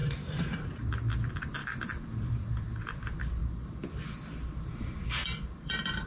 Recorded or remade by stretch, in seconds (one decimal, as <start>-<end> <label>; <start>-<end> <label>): 0.0-6.1 remade